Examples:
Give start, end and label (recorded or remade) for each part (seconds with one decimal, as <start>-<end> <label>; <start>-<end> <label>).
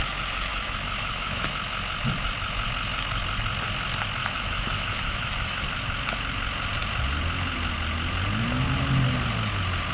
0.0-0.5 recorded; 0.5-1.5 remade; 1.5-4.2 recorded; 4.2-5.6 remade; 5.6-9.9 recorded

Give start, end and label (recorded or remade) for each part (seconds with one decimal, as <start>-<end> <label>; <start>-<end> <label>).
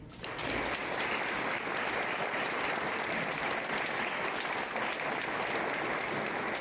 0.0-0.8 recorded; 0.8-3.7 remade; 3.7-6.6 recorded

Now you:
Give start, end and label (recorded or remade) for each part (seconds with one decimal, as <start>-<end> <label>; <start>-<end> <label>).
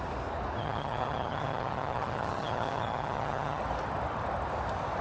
0.0-0.6 recorded; 0.6-3.6 remade; 3.6-5.0 recorded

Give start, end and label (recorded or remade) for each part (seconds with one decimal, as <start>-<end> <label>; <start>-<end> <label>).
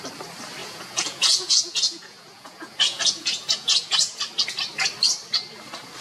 0.0-0.6 recorded; 0.6-4.2 remade; 4.2-6.0 recorded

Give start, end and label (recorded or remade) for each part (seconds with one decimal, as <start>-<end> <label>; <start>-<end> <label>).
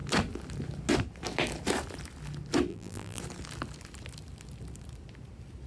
0.0-2.7 recorded; 2.7-3.2 remade; 3.2-5.7 recorded